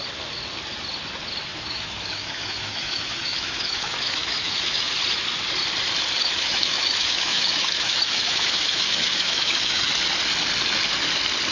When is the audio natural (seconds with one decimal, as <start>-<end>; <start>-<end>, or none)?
0.0-1.5; 4.9-6.2; 9.9-11.5